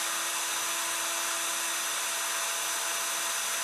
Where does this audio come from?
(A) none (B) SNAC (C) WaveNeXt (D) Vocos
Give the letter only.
A